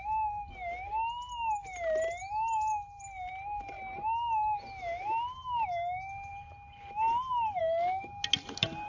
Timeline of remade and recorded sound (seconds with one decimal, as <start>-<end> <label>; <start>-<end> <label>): 0.0-8.9 recorded